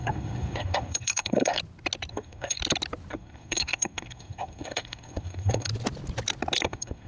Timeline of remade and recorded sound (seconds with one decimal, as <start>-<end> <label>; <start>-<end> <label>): 0.0-1.6 remade; 1.6-2.1 recorded; 2.1-2.6 remade; 2.6-3.1 recorded; 3.1-5.7 remade; 5.7-6.6 recorded; 6.6-7.1 remade